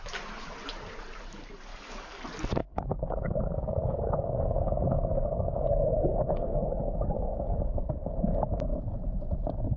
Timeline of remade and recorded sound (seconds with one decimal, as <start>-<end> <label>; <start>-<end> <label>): 0.0-1.7 recorded; 1.7-2.2 remade; 2.2-2.6 recorded; 2.6-7.9 remade; 7.9-9.8 recorded